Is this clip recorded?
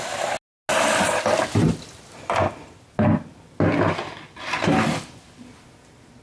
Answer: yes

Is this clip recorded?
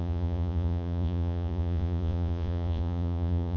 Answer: no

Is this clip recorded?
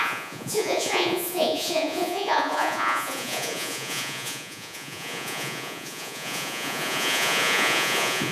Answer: no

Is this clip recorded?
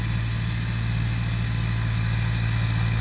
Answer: yes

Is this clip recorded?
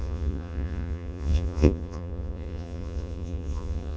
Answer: no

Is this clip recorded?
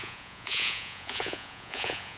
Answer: no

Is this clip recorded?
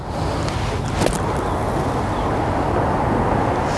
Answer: yes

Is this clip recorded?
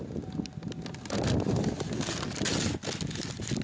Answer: yes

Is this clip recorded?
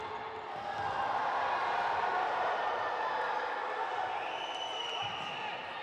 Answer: yes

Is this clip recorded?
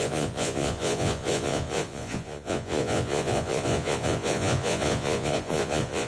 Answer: no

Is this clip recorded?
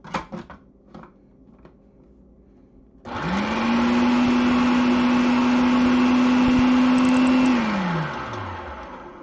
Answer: yes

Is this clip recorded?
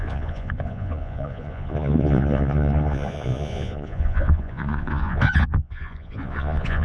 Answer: no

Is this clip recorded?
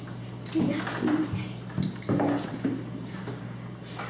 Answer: yes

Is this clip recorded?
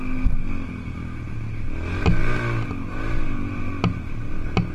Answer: yes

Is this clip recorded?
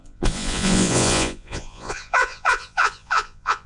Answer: no